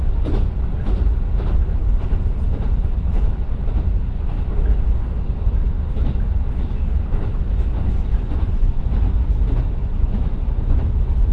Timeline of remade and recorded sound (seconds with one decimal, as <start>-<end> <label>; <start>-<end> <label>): 0.0-8.2 recorded; 8.2-8.8 remade; 8.8-9.8 recorded; 9.8-10.8 remade; 10.8-11.3 recorded